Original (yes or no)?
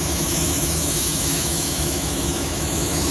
no